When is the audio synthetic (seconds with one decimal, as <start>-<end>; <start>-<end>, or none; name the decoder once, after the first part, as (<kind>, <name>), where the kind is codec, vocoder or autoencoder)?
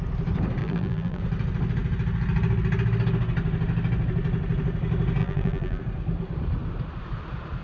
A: 0.6-1.2 (vocoder, BigVGAN v2); 5.2-5.8